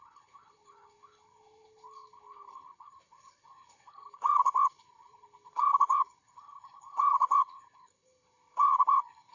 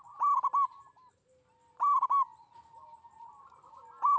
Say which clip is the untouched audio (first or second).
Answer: second